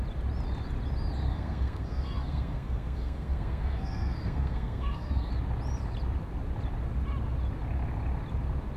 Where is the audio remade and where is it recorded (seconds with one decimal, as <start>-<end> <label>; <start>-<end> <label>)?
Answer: 0.0-1.3 recorded; 1.3-5.3 remade; 5.3-8.8 recorded